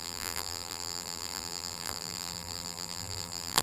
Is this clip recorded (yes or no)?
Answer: no